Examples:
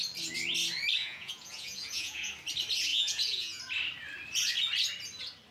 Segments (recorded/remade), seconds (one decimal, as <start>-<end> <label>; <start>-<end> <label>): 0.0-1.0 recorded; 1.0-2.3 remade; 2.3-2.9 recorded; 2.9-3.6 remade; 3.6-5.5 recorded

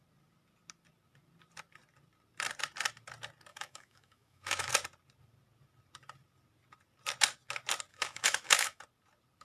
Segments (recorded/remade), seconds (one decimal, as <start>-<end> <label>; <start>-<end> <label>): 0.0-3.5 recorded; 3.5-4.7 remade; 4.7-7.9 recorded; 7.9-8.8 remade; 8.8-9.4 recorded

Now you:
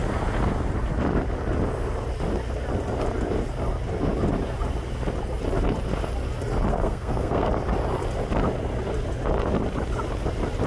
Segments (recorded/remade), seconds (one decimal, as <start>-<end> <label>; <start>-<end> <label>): 0.0-6.7 recorded; 6.7-7.5 remade; 7.5-10.7 recorded

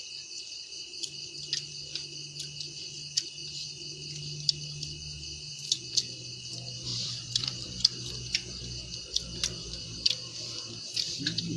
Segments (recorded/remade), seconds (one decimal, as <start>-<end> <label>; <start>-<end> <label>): 0.0-6.9 recorded; 6.9-8.1 remade; 8.1-11.6 recorded